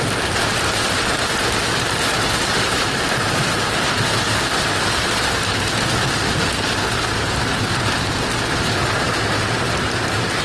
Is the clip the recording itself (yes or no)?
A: no